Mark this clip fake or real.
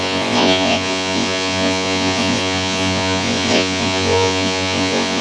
fake